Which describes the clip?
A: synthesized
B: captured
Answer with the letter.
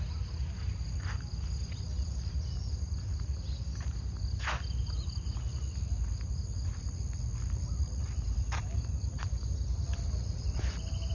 B